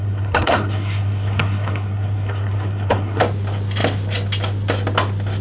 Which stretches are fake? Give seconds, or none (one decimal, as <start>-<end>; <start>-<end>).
0.0-3.2